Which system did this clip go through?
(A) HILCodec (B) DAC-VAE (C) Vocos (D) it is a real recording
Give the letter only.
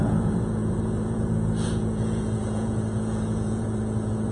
C